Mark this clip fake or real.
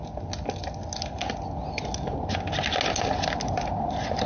real